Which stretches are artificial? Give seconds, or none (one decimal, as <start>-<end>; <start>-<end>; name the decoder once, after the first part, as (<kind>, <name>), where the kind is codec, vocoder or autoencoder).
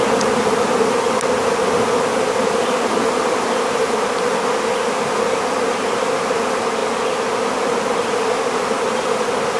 none